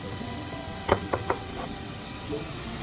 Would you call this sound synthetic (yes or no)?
yes